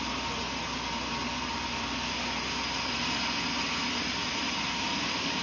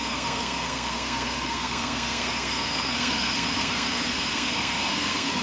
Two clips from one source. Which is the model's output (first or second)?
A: second